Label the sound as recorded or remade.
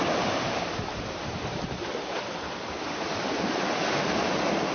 remade